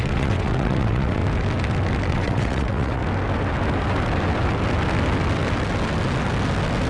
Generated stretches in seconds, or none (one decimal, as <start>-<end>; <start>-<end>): 0.0-1.2; 2.1-3.0

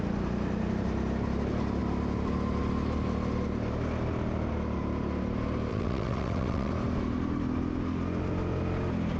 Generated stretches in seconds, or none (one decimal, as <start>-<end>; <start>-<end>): 5.7-6.7

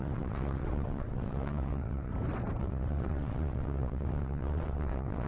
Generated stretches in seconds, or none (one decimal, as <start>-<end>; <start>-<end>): 0.0-2.1; 2.6-5.3

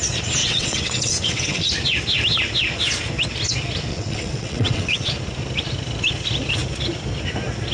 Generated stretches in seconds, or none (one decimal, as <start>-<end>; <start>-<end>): 0.4-1.7; 3.9-5.1

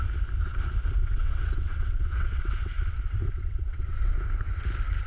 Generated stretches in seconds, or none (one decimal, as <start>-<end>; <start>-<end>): 1.0-4.1

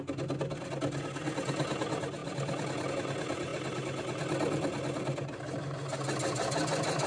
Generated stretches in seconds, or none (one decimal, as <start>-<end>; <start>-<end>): none